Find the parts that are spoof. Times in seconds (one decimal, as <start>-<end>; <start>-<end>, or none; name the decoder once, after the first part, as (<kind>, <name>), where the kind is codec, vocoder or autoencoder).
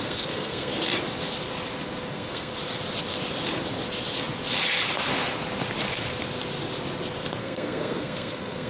0.0-0.7 (codec, SNAC); 2.1-2.5; 7.4-8.7